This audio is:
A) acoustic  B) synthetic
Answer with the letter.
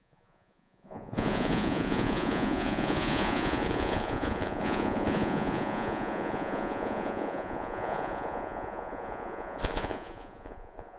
B